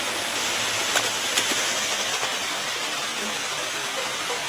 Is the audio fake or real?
real